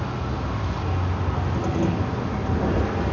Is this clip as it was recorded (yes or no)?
yes